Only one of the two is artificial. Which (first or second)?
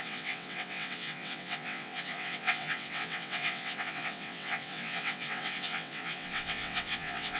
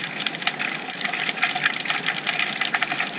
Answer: first